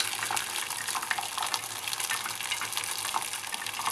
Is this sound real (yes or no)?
yes